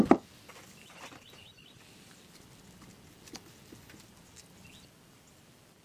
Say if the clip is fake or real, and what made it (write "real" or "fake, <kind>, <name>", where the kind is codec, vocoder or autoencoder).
real